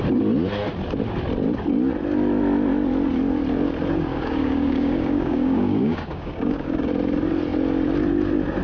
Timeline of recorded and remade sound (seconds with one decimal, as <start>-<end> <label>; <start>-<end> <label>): 0.0-4.1 recorded; 4.1-6.9 remade; 6.9-8.6 recorded